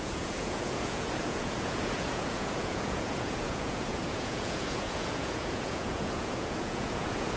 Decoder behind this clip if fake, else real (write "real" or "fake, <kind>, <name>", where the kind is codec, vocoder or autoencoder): fake, vocoder, Vocos